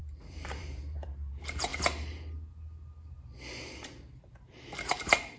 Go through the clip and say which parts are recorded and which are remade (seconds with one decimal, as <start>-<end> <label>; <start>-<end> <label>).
0.0-1.7 remade; 1.7-4.9 recorded; 4.9-5.4 remade